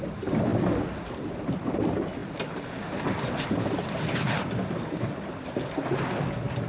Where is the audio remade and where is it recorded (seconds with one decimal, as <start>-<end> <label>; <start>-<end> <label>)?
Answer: 0.0-6.7 recorded